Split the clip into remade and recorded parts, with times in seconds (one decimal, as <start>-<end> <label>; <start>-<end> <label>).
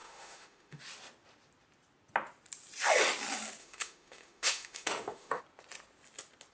0.0-0.8 remade; 0.8-3.6 recorded; 3.6-5.4 remade; 5.4-6.5 recorded